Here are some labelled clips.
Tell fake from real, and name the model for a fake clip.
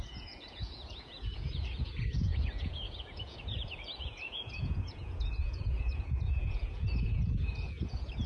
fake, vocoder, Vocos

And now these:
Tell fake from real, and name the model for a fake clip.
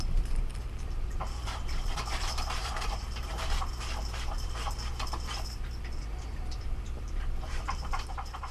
fake, vocoder, BigVGAN v2